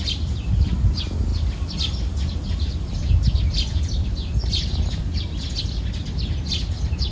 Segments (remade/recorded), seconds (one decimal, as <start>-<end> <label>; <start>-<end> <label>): 0.0-7.1 recorded